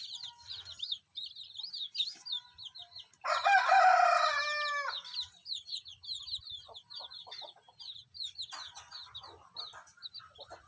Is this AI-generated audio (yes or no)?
no